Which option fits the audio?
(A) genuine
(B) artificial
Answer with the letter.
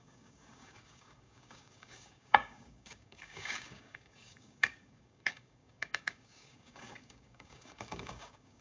B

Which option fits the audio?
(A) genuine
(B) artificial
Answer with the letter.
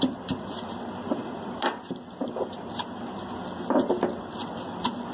A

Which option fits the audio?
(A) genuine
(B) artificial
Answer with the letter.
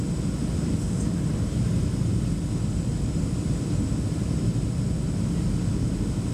A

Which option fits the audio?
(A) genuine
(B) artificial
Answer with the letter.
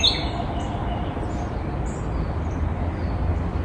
A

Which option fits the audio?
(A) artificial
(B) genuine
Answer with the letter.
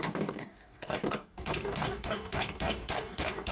A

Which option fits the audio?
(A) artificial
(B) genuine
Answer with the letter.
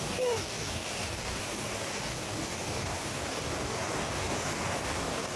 A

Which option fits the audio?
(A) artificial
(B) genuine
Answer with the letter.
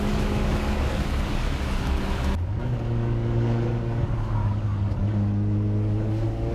A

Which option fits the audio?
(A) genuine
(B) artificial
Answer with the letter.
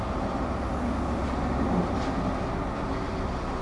A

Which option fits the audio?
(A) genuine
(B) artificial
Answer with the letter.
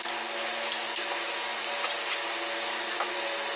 A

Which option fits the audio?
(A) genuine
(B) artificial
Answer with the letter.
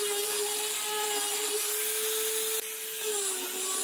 A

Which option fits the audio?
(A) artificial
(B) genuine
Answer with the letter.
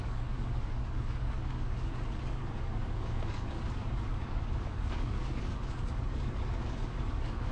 A